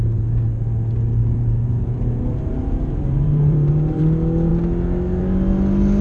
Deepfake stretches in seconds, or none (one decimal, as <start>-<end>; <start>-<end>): 1.2-4.0